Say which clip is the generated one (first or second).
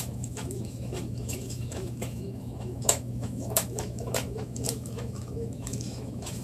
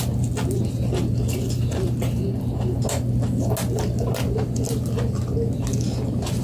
first